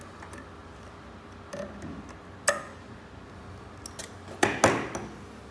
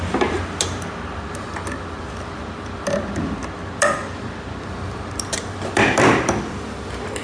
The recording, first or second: first